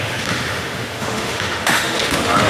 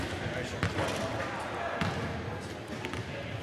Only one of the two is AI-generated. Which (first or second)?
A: first